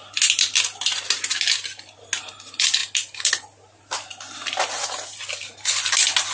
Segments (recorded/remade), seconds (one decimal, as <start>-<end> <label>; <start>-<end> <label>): 0.0-6.3 recorded